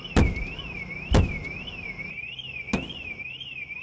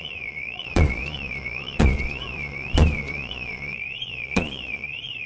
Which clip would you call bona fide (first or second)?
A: first